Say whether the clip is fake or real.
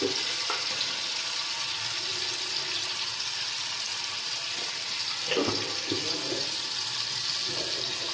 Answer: real